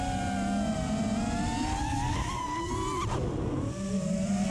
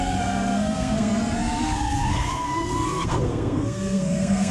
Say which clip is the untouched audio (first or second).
first